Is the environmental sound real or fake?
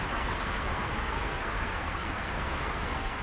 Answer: fake